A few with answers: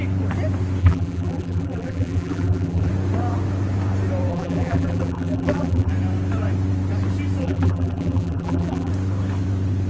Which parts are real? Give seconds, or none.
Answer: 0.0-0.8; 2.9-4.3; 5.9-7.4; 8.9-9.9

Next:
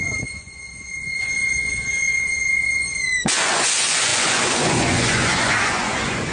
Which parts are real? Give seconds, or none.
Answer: none

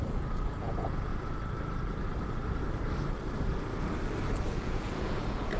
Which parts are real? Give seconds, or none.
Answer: 1.1-4.5

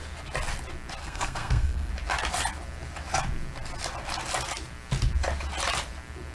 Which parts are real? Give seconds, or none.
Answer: 0.0-1.0; 1.9-6.3

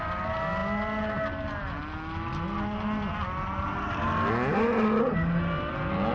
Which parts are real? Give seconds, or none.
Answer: 0.0-6.1

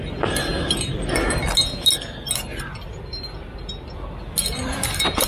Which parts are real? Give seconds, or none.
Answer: 0.0-5.3

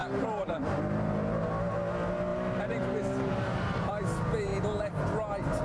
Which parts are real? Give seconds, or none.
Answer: 1.4-2.3; 3.9-5.6